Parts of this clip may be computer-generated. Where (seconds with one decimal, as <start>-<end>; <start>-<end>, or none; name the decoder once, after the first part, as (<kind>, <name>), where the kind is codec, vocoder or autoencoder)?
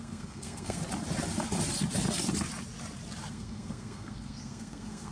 0.0-0.8 (codec, SNAC); 3.3-5.1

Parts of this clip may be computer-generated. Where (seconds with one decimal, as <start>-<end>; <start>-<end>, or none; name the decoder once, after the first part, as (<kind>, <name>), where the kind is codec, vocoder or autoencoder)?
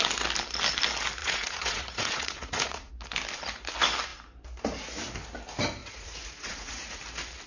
1.2-2.9 (vocoder, Vocos); 5.8-7.0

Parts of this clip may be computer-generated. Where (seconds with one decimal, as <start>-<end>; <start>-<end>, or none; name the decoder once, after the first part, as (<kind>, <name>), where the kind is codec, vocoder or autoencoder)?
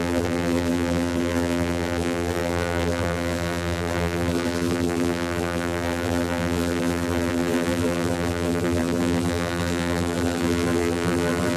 0.0-11.6 (vocoder, BigVGAN v2)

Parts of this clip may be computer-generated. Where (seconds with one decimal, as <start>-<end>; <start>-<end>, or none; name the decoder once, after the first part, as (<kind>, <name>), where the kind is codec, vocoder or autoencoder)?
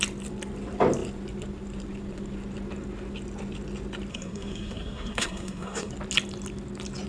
4.1-5.9 (codec, SNAC)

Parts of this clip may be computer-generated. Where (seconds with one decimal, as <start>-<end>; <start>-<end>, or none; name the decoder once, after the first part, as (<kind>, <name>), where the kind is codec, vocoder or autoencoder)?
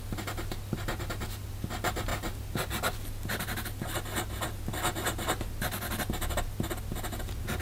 none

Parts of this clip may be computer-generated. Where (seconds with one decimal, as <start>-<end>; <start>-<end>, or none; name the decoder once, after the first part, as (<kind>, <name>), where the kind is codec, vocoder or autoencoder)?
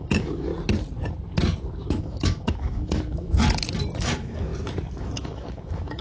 0.0-0.5 (autoencoder, DAC-VAE); 1.9-3.4; 4.0-4.5; 5.0-6.0